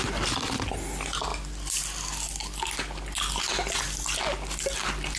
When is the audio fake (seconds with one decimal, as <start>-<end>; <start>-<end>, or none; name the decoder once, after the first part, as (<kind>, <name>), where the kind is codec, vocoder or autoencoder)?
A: none